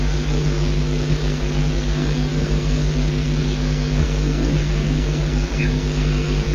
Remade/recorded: remade